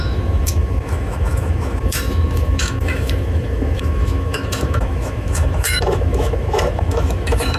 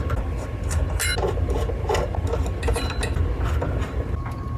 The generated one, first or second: first